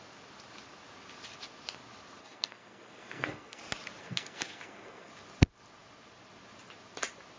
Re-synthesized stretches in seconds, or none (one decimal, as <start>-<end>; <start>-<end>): 2.2-3.6; 4.0-5.1